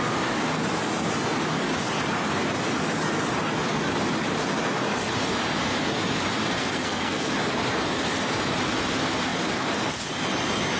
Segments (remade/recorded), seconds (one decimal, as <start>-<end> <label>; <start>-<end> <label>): 0.0-6.6 recorded; 6.6-7.3 remade; 7.3-10.8 recorded